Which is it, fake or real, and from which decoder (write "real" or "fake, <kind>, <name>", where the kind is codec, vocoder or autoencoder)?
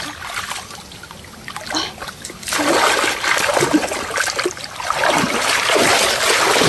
real